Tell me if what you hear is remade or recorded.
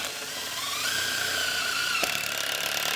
remade